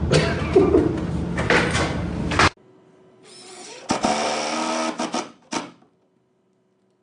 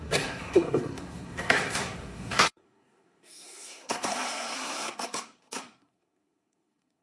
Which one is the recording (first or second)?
first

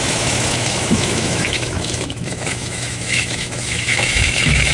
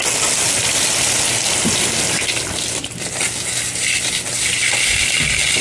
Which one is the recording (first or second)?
second